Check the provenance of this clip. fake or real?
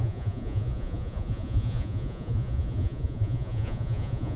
fake